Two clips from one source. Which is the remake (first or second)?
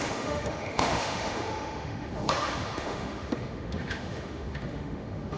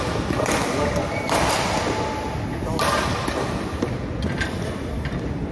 first